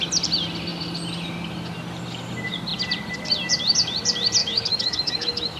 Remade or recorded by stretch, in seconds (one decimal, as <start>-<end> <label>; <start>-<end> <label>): 0.0-4.4 recorded; 4.4-5.6 remade